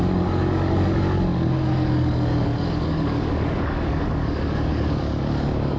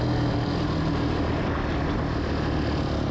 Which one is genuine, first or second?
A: second